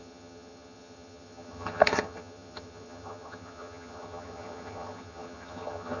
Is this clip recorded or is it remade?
remade